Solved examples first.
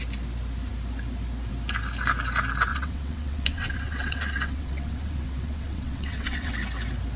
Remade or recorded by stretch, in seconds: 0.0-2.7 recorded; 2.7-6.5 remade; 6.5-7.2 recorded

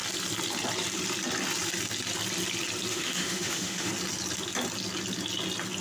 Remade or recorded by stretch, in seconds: 0.0-2.9 recorded; 2.9-3.9 remade; 3.9-5.8 recorded

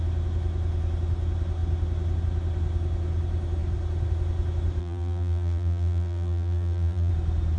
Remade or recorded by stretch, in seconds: 0.0-4.8 recorded; 4.8-7.1 remade; 7.1-7.6 recorded

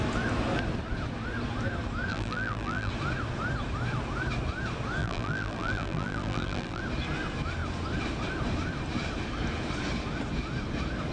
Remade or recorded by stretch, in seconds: 0.0-2.1 recorded; 2.1-2.9 remade; 2.9-5.0 recorded; 5.0-6.8 remade; 6.8-11.1 recorded

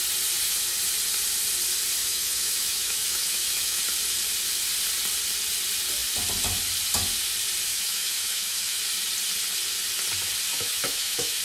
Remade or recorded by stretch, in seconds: 0.0-2.0 recorded; 2.0-3.8 remade; 3.8-7.7 recorded; 7.7-8.8 remade; 8.8-10.5 recorded; 10.5-11.4 remade

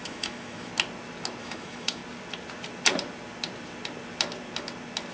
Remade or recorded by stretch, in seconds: 0.0-0.7 remade; 0.7-1.4 recorded; 1.4-2.0 remade; 2.0-5.1 recorded